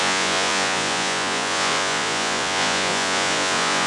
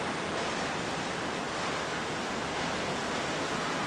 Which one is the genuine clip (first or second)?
second